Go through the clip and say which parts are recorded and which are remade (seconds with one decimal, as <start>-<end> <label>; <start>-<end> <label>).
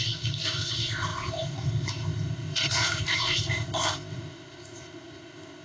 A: 0.0-5.6 remade